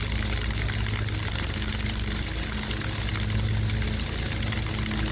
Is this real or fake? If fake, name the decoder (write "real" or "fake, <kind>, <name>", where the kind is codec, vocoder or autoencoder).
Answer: real